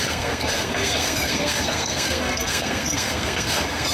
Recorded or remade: remade